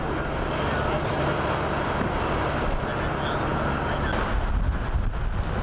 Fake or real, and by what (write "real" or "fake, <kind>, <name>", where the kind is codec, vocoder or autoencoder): real